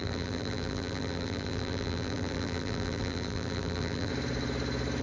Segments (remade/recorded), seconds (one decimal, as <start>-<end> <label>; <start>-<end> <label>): 0.0-4.1 remade; 4.1-5.0 recorded